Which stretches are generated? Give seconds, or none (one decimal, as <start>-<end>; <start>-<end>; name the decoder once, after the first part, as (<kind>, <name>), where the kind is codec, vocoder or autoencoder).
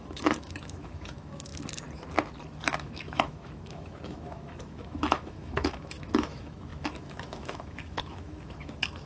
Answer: 0.0-1.5 (autoencoder, DAC-VAE); 2.8-9.1